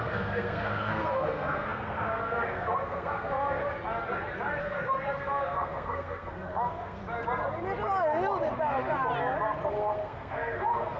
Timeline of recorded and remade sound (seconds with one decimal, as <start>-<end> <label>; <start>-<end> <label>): 0.0-3.6 remade; 3.6-4.6 recorded; 4.6-7.0 remade; 7.0-9.7 recorded; 9.7-11.0 remade